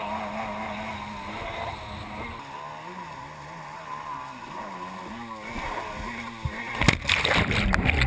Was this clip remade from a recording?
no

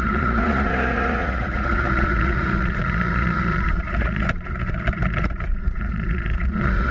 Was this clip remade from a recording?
yes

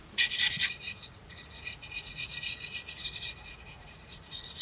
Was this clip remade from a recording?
yes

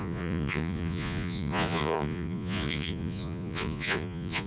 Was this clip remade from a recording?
yes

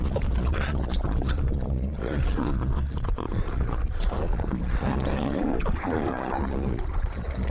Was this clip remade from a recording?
yes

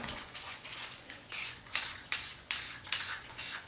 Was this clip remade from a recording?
yes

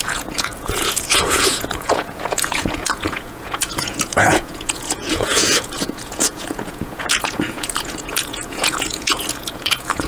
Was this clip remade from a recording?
yes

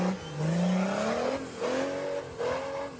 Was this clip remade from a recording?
no